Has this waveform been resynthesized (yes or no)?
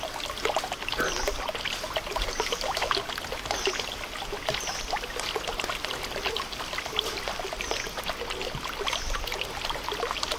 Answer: no